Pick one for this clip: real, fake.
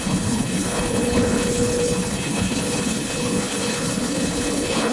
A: fake